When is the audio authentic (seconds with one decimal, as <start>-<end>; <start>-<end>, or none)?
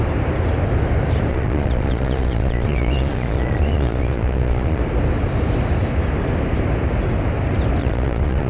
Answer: 0.0-1.3; 4.8-7.8